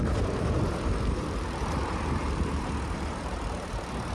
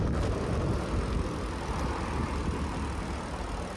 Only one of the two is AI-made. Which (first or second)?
first